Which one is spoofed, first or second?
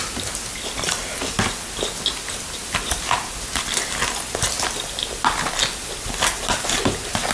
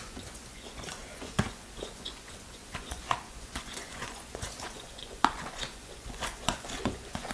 second